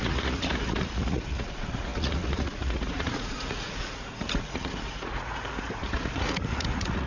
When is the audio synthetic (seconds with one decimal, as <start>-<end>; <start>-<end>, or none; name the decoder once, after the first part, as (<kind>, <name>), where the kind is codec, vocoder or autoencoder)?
0.0-7.1 (vocoder, Vocos)